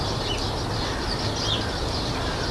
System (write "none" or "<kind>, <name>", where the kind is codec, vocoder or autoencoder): none